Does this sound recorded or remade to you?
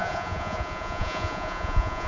remade